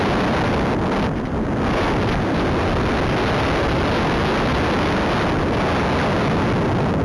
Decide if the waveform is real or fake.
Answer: real